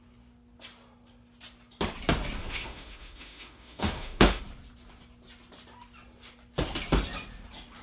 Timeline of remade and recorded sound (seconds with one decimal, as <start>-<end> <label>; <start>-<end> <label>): 0.0-2.4 recorded; 2.4-4.4 remade; 4.4-7.8 recorded